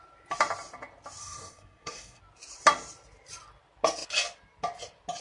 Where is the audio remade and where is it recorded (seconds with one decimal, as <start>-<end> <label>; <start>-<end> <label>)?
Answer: 0.0-1.2 recorded; 1.2-2.2 remade; 2.2-5.2 recorded